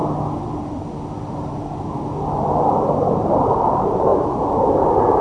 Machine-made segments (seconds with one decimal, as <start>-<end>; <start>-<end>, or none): 3.1-4.1